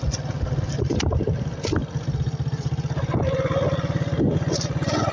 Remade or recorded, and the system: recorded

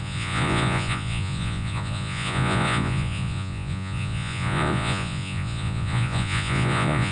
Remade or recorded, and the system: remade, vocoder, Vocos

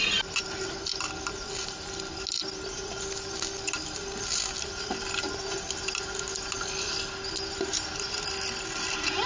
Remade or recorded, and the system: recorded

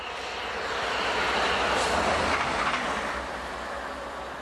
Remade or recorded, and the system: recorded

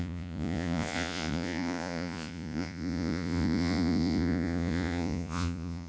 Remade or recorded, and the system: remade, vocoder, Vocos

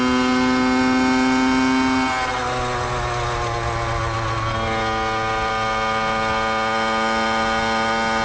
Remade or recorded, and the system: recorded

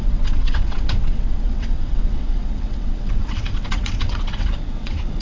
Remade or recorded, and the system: remade, vocoder, WaveNeXt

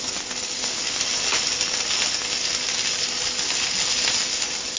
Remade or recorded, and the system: recorded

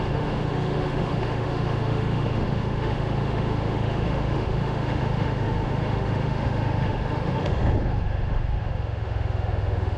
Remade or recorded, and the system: remade, autoencoder, DAC-VAE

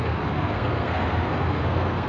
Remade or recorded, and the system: remade, codec, SNAC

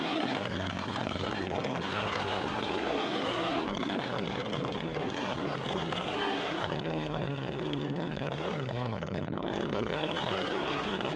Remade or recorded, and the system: remade, codec, SNAC